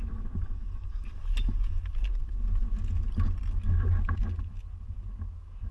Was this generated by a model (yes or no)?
no